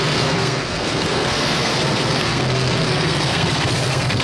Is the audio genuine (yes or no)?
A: no